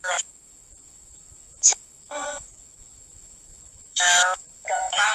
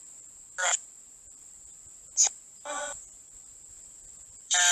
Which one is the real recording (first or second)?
second